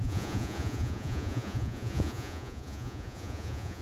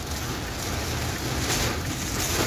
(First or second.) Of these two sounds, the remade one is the first